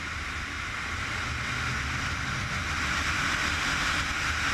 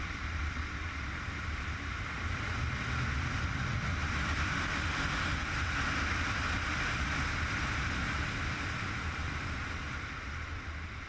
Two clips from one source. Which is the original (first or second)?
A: first